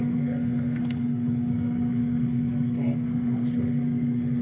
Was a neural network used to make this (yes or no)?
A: yes